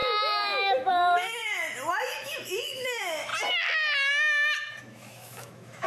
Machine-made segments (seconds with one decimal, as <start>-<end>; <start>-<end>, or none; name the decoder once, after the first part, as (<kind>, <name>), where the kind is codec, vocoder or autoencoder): 0.0-1.4 (autoencoder, DAC-VAE); 1.9-3.3; 4.8-5.9